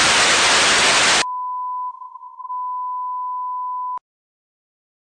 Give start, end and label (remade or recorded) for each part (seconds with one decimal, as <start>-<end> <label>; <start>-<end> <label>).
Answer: 0.0-1.9 recorded; 1.9-2.5 remade; 2.5-5.1 recorded